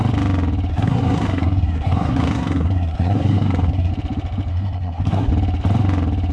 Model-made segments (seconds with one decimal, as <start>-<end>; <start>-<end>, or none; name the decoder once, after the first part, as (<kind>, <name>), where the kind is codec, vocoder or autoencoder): 0.7-3.9 (codec, SNAC); 4.5-5.3

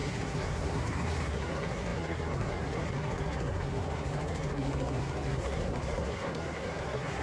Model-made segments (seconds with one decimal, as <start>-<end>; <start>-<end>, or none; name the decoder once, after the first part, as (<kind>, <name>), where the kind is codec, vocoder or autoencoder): 0.0-7.2 (codec, SNAC)

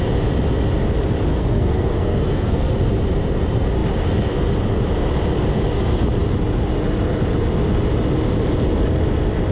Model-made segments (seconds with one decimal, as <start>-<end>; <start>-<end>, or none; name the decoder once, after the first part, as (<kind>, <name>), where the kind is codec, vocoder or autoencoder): 1.3-2.7 (codec, SNAC)